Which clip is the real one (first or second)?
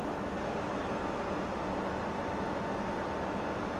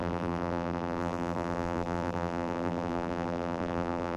first